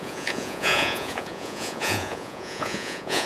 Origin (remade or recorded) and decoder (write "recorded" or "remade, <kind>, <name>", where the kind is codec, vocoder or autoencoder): remade, vocoder, Vocos